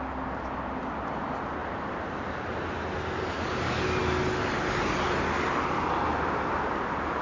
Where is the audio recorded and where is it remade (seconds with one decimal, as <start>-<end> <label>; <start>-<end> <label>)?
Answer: 0.0-7.2 recorded

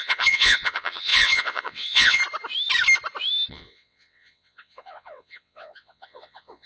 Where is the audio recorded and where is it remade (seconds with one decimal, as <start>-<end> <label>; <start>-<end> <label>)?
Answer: 0.0-2.2 remade; 2.2-3.5 recorded; 3.5-6.7 remade

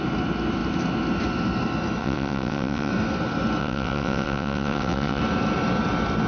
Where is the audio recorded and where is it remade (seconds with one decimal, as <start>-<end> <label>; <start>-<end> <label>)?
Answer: 0.0-2.0 recorded; 2.0-2.9 remade; 2.9-3.6 recorded; 3.6-5.2 remade; 5.2-6.3 recorded

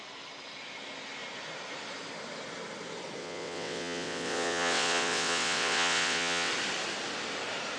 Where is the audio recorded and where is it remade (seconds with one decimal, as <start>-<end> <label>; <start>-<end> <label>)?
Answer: 0.0-3.2 recorded; 3.2-6.5 remade; 6.5-7.8 recorded

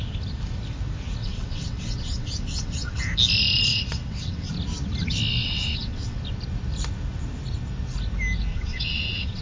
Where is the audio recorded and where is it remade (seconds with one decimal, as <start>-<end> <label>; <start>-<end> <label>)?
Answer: 0.0-1.2 recorded; 1.2-3.0 remade; 3.0-3.7 recorded; 3.7-4.5 remade; 4.5-5.4 recorded; 5.4-6.2 remade; 6.2-8.5 recorded; 8.5-9.4 remade

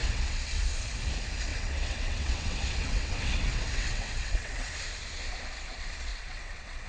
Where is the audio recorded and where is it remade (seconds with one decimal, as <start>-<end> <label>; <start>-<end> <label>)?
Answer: 0.0-0.6 remade; 0.6-1.5 recorded; 1.5-4.7 remade; 4.7-6.1 recorded; 6.1-6.9 remade

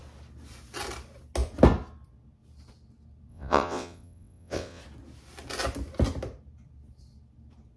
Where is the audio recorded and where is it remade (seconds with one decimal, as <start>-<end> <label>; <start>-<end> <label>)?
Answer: 0.0-3.3 recorded; 3.3-4.8 remade; 4.8-7.8 recorded